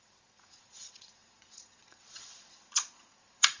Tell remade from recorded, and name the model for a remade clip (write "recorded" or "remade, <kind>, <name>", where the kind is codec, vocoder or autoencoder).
remade, vocoder, Vocos